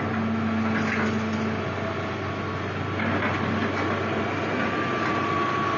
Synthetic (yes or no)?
no